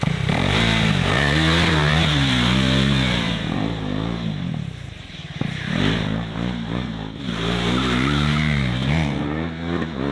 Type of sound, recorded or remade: remade